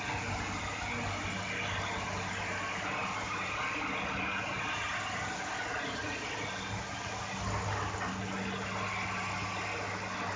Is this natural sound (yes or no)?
yes